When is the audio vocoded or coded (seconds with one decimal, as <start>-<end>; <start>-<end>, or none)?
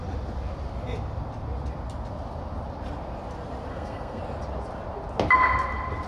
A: 3.7-4.2